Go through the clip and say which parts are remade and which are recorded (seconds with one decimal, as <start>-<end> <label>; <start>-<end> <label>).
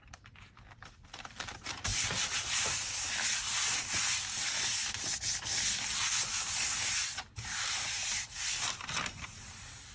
0.0-1.9 recorded; 1.9-2.9 remade; 2.9-9.9 recorded